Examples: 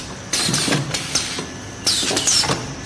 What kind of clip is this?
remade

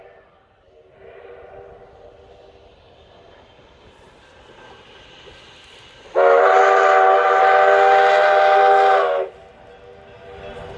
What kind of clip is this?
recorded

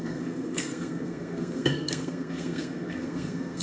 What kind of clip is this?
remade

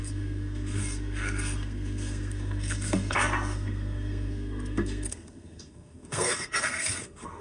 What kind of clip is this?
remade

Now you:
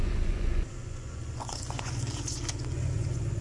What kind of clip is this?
remade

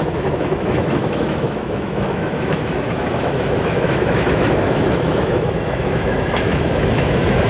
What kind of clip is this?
remade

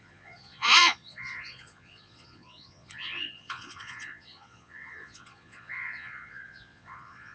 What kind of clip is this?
remade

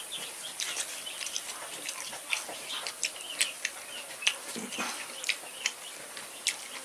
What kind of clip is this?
recorded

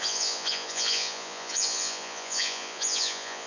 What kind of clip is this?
remade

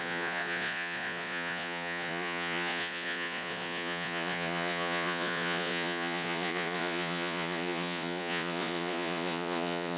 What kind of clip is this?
remade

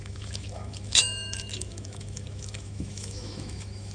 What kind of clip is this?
remade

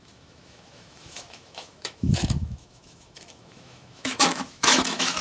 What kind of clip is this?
remade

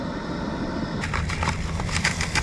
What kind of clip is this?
remade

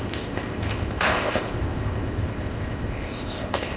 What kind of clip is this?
remade